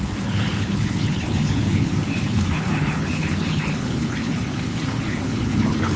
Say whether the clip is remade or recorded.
remade